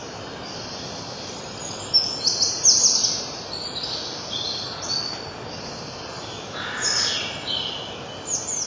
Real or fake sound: real